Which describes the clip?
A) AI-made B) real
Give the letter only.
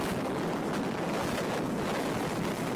B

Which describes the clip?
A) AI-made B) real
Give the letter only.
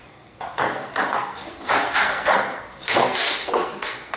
A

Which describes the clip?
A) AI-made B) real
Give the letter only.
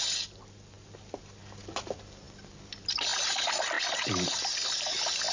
B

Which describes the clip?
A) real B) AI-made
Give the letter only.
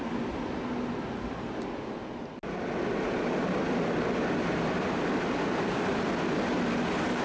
A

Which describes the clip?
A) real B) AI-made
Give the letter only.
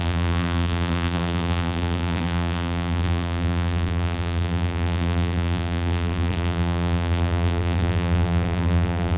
B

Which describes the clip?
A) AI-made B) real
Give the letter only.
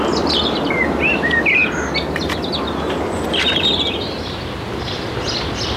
B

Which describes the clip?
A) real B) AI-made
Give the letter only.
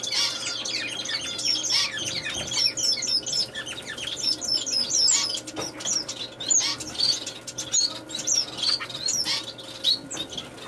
A